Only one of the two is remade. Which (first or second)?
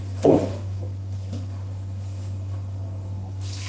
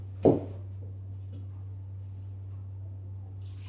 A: first